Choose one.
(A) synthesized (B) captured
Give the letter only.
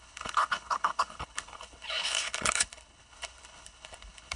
A